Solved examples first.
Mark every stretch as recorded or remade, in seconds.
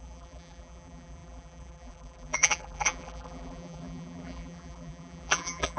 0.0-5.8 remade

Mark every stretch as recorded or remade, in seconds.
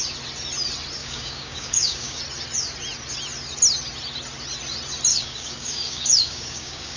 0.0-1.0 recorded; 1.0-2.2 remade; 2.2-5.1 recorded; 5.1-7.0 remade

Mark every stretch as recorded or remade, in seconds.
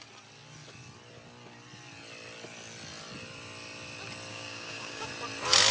0.0-4.3 recorded; 4.3-5.1 remade; 5.1-5.7 recorded